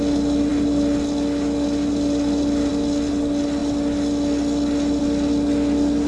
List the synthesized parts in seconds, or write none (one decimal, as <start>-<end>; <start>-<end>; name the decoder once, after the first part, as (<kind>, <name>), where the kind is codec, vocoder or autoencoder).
none